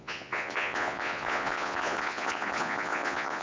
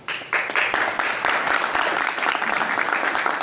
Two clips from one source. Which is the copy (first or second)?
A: first